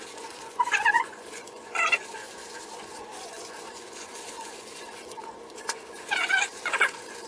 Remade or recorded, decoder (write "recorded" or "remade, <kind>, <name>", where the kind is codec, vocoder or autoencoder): remade, vocoder, Vocos